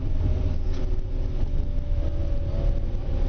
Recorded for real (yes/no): yes